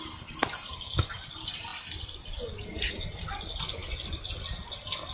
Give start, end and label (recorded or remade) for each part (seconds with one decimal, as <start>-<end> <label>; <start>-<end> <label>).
0.0-5.1 recorded